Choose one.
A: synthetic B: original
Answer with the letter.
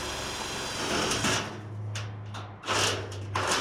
B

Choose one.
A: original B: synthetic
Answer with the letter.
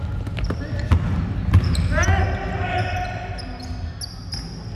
A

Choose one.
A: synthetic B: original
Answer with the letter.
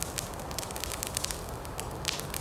B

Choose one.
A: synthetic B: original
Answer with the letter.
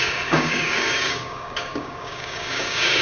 A